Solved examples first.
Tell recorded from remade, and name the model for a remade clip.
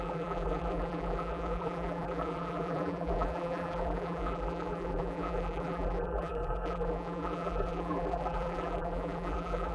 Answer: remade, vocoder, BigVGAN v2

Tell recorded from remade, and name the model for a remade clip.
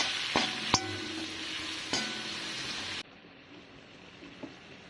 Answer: recorded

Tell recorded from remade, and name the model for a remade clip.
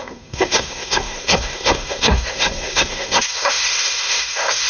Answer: remade, codec, SNAC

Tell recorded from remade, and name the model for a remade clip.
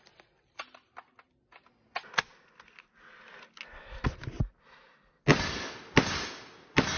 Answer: recorded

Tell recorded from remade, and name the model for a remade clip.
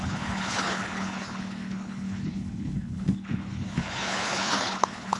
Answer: remade, codec, HILCodec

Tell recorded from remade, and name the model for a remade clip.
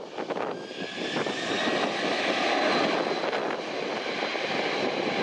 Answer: recorded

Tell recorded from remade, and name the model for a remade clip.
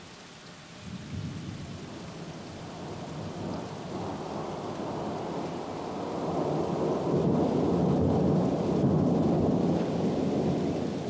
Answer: recorded